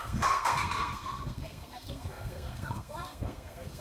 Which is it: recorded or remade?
remade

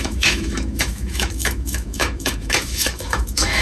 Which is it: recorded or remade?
remade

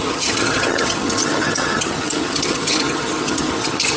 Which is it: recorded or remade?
remade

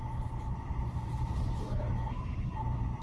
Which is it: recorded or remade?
recorded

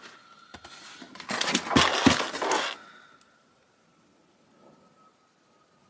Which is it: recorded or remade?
recorded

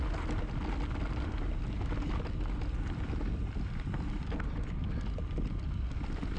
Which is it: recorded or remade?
recorded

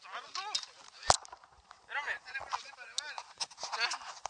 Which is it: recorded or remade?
recorded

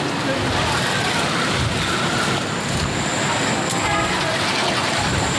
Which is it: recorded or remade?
recorded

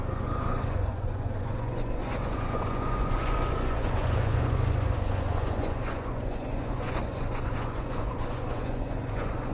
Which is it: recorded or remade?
remade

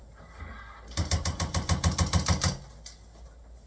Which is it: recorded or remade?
recorded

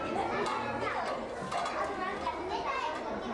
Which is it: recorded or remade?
recorded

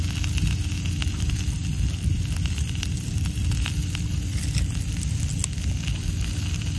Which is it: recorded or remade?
recorded